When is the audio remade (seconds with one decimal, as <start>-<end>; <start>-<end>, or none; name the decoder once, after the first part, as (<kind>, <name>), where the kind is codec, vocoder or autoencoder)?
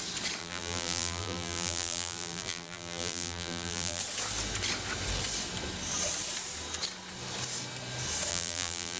0.4-4.0 (vocoder, BigVGAN v2); 8.3-9.0